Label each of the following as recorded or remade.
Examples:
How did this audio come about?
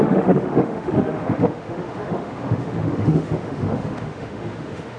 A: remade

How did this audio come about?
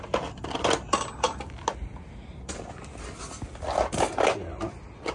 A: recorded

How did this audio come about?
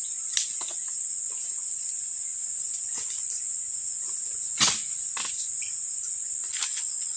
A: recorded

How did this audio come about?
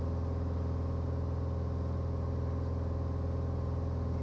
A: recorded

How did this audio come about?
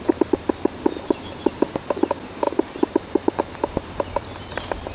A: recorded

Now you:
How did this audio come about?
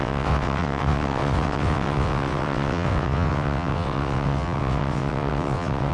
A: remade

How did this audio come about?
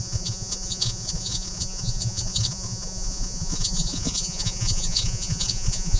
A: remade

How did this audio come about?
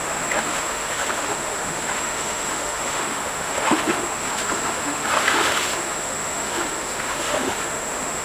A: remade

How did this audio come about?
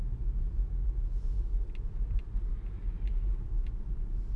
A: recorded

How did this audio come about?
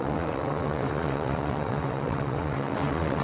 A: remade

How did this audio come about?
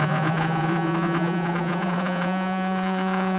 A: remade